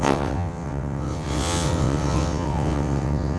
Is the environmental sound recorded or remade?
remade